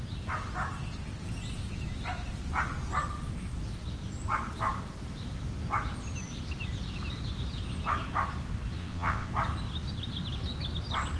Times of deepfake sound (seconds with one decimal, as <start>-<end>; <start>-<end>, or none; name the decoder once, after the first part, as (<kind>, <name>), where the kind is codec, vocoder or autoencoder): 8.8-9.3 (vocoder, WaveNeXt)